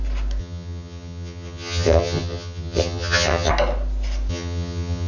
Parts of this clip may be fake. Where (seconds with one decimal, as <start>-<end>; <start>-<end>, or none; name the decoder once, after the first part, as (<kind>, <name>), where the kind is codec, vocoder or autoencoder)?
0.4-3.5 (vocoder, HiFi-GAN); 4.3-5.1